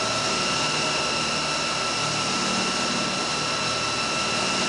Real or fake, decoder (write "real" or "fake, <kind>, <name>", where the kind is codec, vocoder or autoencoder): real